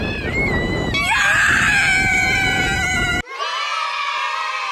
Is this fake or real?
real